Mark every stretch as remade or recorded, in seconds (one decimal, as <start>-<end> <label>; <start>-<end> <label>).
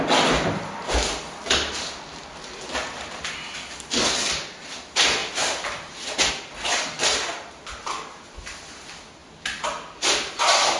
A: 0.0-10.8 recorded